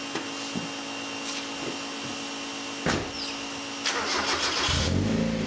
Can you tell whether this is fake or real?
real